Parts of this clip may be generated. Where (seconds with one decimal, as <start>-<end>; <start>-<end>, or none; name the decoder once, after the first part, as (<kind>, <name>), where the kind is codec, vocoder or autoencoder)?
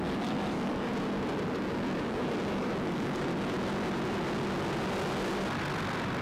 0.0-0.9 (codec, DAC); 1.5-3.3